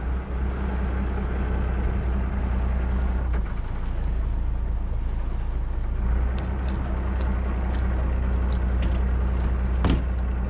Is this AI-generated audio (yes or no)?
no